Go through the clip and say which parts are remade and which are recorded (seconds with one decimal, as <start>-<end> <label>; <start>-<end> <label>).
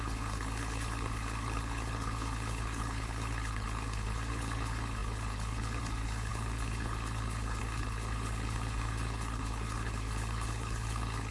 0.0-11.3 remade